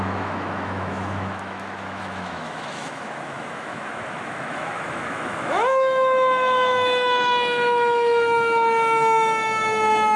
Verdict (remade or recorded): remade